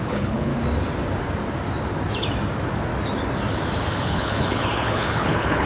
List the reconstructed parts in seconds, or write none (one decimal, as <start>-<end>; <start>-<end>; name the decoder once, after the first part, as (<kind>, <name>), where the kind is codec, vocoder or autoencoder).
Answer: 0.0-0.5 (codec, HILCodec); 3.9-5.7